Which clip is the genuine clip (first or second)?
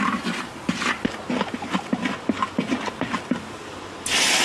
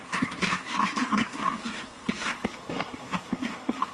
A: first